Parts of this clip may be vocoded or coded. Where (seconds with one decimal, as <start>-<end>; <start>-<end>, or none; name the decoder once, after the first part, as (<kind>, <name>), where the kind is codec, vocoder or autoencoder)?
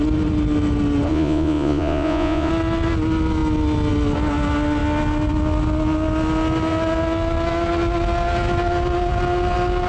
1.1-2.5 (vocoder, Vocos)